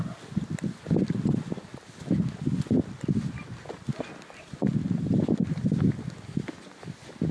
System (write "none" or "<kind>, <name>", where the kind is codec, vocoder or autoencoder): none